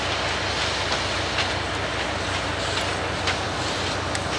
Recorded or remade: recorded